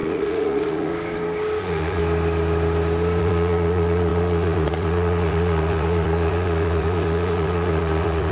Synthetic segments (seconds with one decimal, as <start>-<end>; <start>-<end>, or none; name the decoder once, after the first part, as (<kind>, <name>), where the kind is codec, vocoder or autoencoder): 0.0-0.9 (vocoder, Vocos); 1.6-2.0; 3.2-8.3